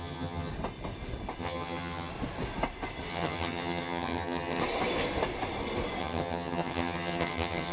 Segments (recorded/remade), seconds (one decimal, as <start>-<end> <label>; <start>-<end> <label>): 0.0-0.5 remade; 0.5-1.4 recorded; 1.4-2.1 remade; 2.1-3.1 recorded; 3.1-4.6 remade; 4.6-6.0 recorded; 6.0-7.7 remade